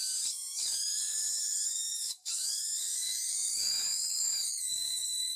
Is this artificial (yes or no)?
yes